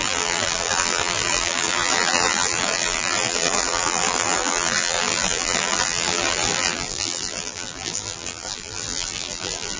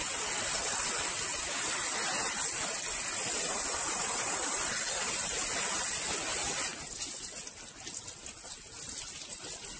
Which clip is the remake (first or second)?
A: first